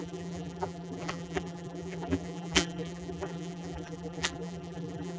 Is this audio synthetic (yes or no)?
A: yes